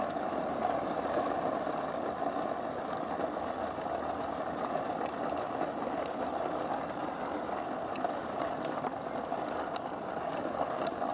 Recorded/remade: recorded